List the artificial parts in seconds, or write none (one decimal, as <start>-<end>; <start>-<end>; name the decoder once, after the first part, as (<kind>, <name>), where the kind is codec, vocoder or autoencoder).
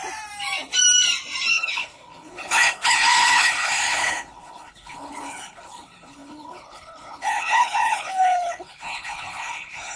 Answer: 1.5-10.0 (codec, HILCodec)